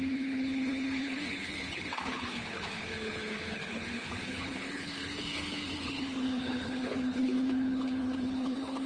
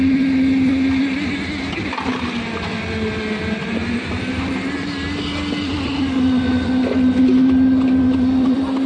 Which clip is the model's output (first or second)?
first